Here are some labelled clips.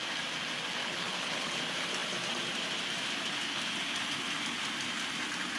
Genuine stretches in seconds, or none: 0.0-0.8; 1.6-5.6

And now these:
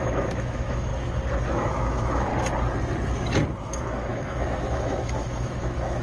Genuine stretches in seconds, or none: 0.9-1.5; 2.3-3.6

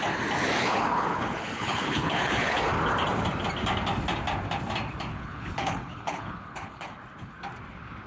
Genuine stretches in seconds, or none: 0.0-0.6; 2.6-5.1; 6.9-8.1

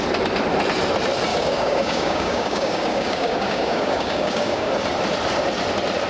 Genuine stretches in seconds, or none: 0.0-1.3; 4.7-6.1

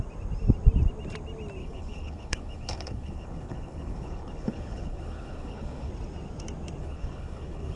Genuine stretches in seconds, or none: 0.0-1.6; 5.9-6.8